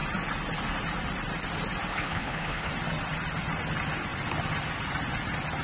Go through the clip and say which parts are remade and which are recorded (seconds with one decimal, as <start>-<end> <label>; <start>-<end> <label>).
0.0-1.9 recorded; 1.9-2.7 remade; 2.7-5.6 recorded

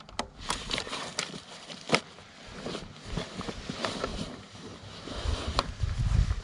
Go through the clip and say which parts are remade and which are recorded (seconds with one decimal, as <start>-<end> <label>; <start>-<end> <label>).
0.0-4.1 recorded; 4.1-5.1 remade; 5.1-6.4 recorded

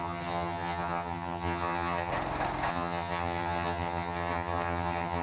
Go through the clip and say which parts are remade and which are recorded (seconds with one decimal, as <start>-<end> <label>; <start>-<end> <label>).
0.0-2.1 remade; 2.1-2.7 recorded; 2.7-5.2 remade

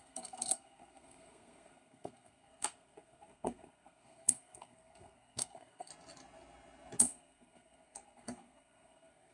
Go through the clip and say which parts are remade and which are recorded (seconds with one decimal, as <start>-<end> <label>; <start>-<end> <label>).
0.0-5.9 remade; 5.9-7.0 recorded; 7.0-9.3 remade

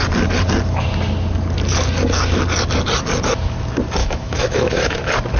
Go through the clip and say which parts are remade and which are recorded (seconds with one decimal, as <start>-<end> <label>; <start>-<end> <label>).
0.0-4.0 recorded; 4.0-5.0 remade; 5.0-5.4 recorded

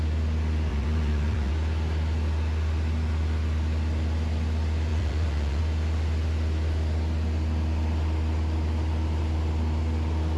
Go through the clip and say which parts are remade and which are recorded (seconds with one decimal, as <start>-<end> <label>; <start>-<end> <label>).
0.0-0.7 recorded; 0.7-1.5 remade; 1.5-4.9 recorded; 4.9-5.6 remade; 5.6-10.4 recorded